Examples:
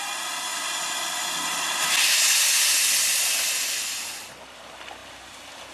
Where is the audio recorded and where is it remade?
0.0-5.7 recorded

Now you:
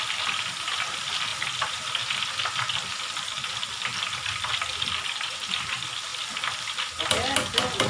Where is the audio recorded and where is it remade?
0.0-1.3 recorded; 1.3-1.9 remade; 1.9-3.9 recorded; 3.9-4.5 remade; 4.5-6.1 recorded; 6.1-6.7 remade; 6.7-7.9 recorded